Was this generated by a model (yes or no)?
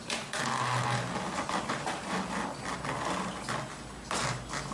no